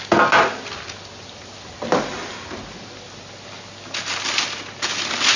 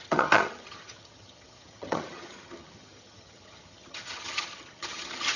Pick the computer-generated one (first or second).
second